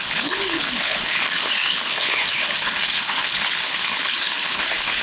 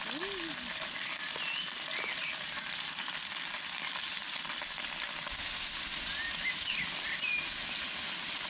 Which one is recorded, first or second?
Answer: second